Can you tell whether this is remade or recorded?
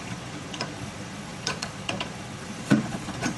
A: remade